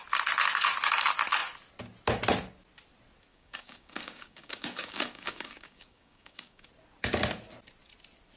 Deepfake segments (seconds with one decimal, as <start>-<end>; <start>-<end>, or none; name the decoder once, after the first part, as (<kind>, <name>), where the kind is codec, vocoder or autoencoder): 3.3-6.7 (codec, DAC)